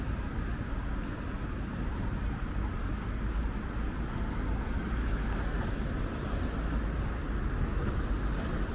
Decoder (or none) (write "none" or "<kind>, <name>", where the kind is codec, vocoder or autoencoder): none